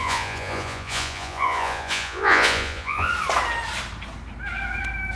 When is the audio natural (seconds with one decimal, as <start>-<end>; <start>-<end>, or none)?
3.1-5.2